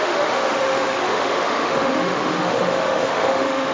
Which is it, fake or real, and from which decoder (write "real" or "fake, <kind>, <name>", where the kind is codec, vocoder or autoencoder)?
fake, autoencoder, DAC-VAE